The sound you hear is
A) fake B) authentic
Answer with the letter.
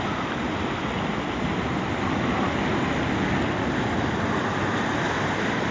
B